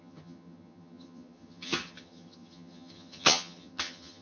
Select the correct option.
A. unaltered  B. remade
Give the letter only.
B